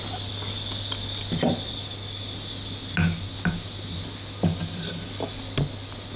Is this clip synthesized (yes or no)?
no